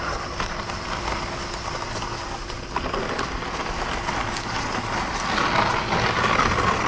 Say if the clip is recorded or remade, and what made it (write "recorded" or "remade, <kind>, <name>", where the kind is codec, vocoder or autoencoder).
recorded